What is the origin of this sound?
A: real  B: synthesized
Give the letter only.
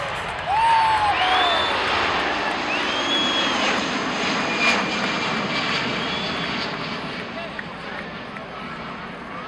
A